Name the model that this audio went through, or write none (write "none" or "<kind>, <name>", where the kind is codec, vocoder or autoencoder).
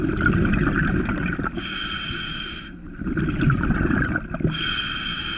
none